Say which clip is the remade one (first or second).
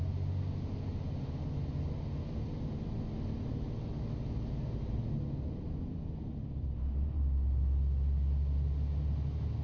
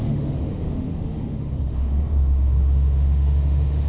second